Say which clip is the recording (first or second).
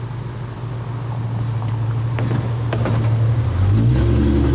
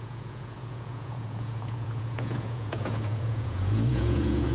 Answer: first